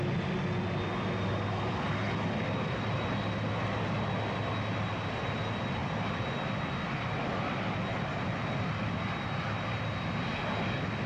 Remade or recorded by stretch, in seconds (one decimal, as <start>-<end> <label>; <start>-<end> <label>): 0.0-11.1 recorded